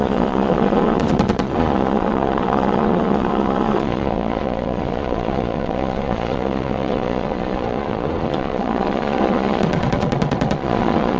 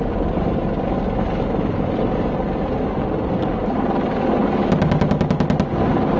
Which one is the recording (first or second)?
second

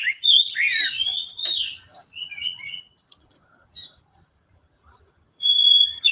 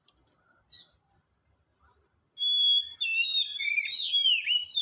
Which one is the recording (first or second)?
second